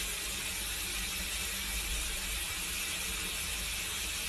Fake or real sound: real